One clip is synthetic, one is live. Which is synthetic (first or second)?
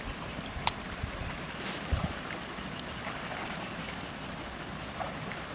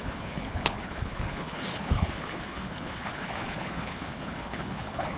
second